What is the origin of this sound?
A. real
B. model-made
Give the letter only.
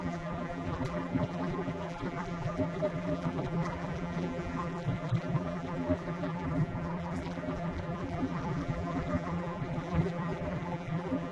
B